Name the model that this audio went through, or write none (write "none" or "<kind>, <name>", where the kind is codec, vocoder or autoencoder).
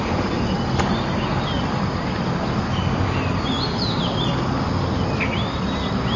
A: none